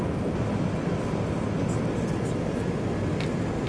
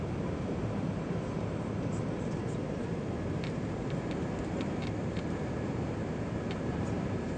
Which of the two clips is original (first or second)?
first